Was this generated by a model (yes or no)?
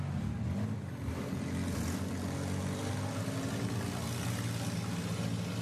no